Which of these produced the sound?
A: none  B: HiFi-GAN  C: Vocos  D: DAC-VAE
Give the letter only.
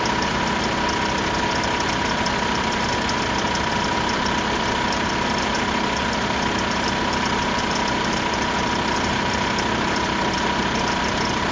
A